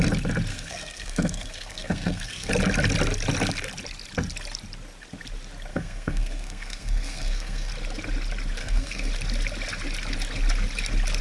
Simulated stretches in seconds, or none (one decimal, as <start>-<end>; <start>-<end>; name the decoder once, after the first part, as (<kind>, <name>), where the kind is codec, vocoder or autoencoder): 0.5-2.5 (codec, SNAC); 5.7-7.7; 8.6-9.1